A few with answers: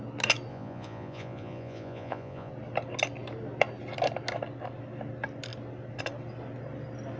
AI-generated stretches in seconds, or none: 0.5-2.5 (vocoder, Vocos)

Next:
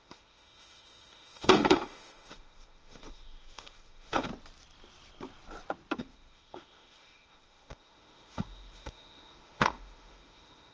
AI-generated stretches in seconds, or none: 0.0-4.3 (autoencoder, DAC-VAE); 6.0-10.7

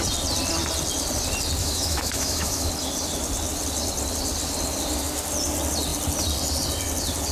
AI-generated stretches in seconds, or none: 1.6-2.7 (autoencoder, DAC-VAE)

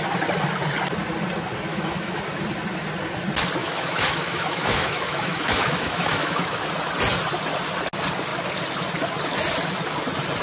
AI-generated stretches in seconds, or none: 1.7-2.2 (autoencoder, DAC-VAE); 3.6-6.6

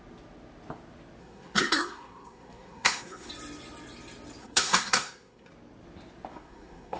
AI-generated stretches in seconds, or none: 1.2-3.3 (codec, SNAC); 4.4-5.5; 6.3-7.0